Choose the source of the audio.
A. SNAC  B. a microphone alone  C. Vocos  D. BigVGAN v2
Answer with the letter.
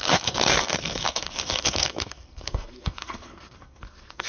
A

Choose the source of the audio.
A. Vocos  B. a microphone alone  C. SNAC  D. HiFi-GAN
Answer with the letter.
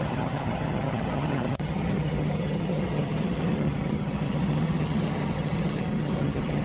D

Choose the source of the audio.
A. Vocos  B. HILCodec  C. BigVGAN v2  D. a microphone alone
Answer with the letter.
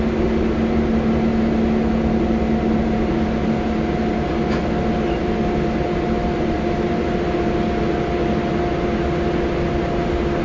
D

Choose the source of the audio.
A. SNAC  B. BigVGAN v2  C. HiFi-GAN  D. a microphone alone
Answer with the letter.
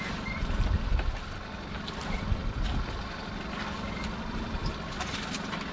D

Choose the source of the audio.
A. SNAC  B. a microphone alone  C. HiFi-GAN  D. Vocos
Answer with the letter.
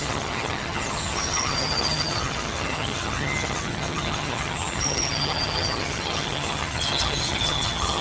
C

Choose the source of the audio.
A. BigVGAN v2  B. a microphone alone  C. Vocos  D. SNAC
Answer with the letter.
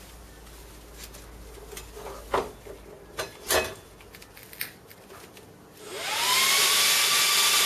B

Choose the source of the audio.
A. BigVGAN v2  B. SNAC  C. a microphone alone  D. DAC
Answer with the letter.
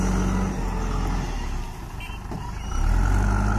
C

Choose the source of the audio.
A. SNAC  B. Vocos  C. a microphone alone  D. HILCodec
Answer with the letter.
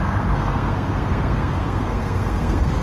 A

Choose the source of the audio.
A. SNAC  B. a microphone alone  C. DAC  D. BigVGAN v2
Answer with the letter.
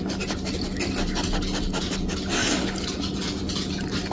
B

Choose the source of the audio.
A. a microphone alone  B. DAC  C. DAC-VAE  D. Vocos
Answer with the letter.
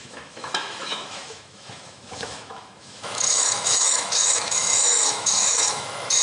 C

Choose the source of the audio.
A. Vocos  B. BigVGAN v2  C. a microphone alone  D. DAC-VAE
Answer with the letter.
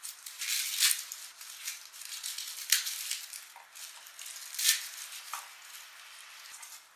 C